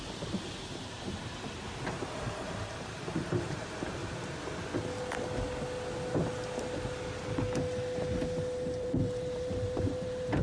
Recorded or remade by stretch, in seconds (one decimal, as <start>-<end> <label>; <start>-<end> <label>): 0.0-4.0 remade; 4.0-8.8 recorded; 8.8-10.4 remade